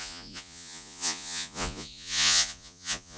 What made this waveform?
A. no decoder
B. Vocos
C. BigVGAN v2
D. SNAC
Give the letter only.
B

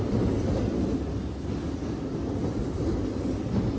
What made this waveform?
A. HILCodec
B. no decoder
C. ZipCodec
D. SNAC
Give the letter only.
B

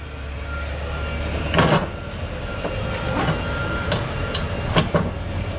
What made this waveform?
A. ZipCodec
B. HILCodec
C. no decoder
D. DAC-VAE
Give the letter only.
C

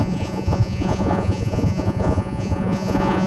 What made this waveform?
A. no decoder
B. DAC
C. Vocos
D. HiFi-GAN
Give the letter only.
C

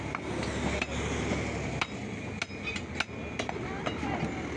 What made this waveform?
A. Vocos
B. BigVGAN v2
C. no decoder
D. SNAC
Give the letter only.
C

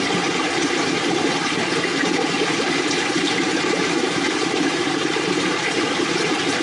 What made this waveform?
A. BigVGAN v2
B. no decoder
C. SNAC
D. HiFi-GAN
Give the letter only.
A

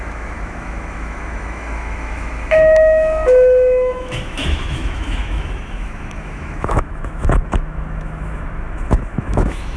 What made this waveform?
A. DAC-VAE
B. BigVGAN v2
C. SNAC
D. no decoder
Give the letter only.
A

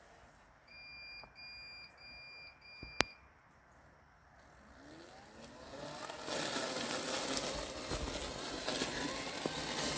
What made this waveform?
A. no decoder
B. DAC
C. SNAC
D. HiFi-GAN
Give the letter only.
A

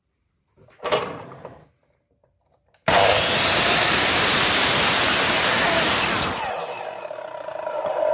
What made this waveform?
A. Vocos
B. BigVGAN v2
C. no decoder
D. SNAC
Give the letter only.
B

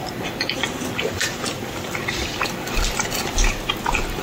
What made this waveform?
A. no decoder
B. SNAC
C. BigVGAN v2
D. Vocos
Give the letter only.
A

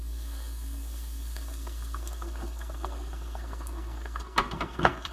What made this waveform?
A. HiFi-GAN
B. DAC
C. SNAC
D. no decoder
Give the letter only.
C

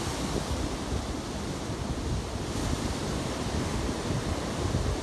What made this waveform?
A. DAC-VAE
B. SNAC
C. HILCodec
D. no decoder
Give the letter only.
D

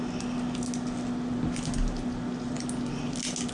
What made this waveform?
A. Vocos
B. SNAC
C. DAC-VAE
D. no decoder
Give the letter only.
D